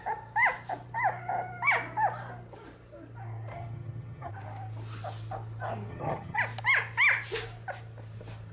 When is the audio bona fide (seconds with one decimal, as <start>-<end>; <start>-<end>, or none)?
0.0-3.5; 4.3-5.9; 6.4-8.5